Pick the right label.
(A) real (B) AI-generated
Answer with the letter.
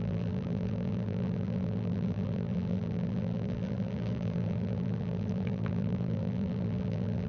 B